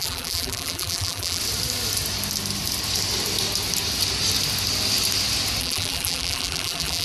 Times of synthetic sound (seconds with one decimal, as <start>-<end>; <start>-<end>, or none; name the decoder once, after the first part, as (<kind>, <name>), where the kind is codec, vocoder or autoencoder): 0.0-1.4 (vocoder, BigVGAN v2); 5.6-7.0